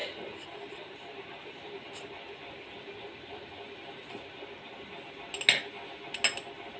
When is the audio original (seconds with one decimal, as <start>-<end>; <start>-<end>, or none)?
4.1-6.8